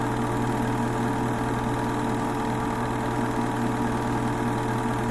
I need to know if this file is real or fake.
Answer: real